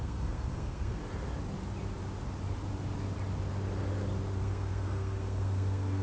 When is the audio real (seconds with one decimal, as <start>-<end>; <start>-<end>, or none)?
1.0-4.4